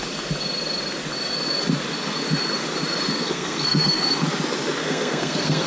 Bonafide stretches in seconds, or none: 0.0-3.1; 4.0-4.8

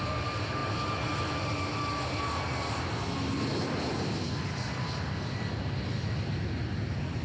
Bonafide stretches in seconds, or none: 0.0-7.2

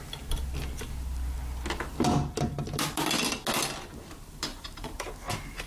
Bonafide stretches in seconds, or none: 0.0-4.5; 5.1-5.7

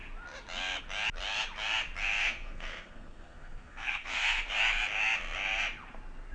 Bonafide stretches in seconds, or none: 0.0-2.2; 4.5-6.3